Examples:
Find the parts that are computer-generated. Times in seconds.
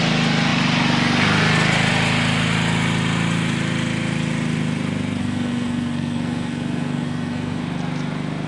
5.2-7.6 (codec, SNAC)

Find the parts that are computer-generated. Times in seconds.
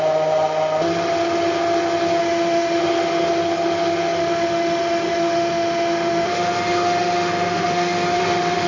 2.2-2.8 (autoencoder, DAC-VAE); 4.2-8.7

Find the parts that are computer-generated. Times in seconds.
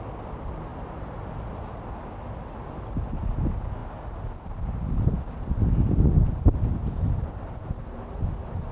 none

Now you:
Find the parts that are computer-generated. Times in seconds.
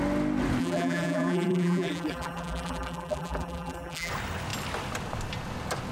0.6-4.1 (vocoder, BigVGAN v2)